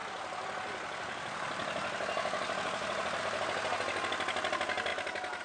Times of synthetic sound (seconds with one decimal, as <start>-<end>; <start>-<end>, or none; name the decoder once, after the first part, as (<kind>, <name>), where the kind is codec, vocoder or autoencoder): none